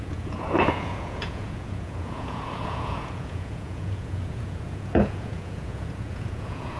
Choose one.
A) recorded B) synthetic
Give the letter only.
B